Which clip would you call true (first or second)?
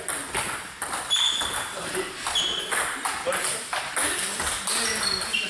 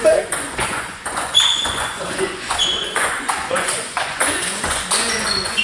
first